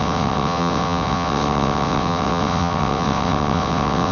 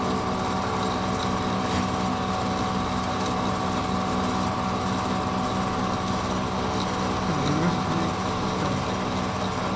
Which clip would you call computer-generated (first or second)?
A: first